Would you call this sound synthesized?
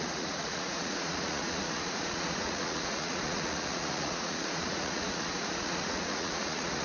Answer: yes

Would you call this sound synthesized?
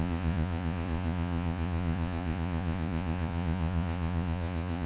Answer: yes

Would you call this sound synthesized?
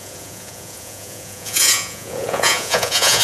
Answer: yes